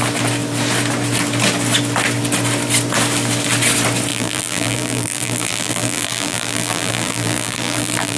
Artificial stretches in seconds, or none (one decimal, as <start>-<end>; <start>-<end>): 4.1-8.2